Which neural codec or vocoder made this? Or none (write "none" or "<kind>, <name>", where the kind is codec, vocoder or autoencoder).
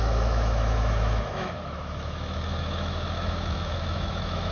autoencoder, DAC-VAE